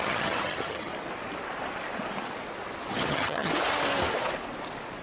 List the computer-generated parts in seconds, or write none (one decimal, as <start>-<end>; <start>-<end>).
0.0-0.9; 2.9-3.5